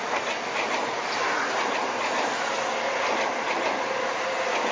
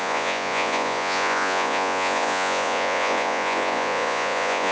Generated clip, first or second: second